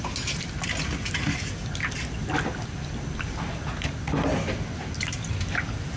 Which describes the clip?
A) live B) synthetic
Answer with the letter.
A